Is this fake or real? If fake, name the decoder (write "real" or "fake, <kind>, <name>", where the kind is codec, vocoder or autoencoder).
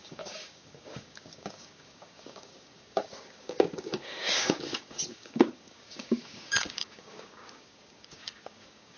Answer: fake, codec, DAC